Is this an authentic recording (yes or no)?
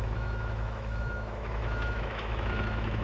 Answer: no